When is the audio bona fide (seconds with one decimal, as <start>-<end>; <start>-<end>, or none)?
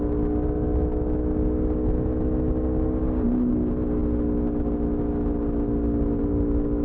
0.0-6.8